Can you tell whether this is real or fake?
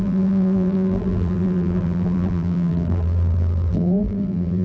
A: fake